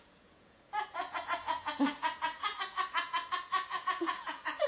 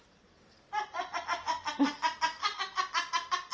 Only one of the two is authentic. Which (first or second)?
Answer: second